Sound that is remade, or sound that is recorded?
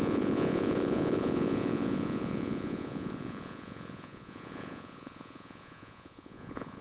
remade